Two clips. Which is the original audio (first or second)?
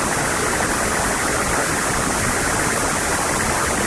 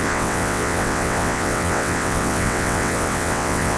first